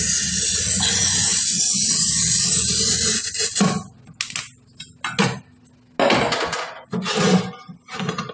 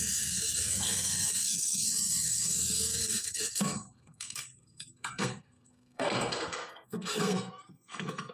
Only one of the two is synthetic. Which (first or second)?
second